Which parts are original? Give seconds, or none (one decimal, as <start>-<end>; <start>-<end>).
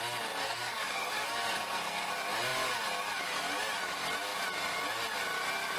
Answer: 0.0-0.4; 2.1-5.8